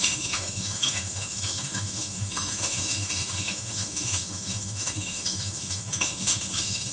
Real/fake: fake